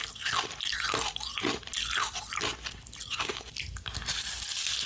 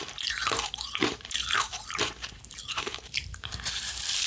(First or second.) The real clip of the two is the first